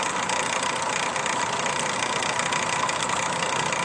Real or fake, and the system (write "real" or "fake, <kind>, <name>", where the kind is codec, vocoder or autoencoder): real